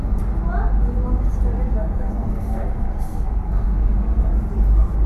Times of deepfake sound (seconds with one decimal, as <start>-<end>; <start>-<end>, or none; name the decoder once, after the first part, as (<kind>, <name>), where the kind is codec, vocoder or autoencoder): 1.8-4.3 (codec, SNAC)